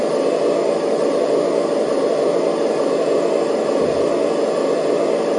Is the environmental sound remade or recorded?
recorded